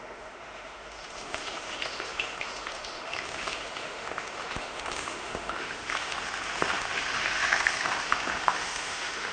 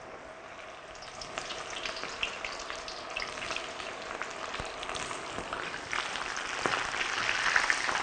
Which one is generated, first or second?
first